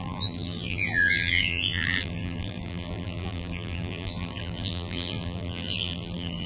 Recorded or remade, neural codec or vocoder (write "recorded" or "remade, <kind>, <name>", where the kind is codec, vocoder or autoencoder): remade, vocoder, BigVGAN v2